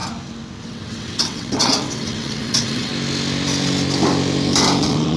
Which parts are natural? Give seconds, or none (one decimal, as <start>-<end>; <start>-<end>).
0.0-0.6; 2.9-4.8